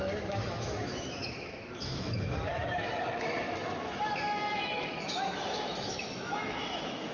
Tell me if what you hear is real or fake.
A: fake